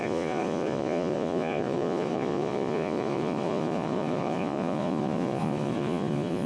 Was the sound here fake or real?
fake